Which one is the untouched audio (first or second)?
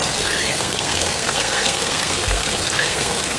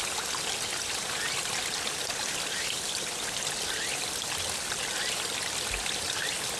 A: second